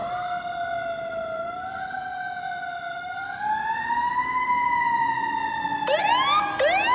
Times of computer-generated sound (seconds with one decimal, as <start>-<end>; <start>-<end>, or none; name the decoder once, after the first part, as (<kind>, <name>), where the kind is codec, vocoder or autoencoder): none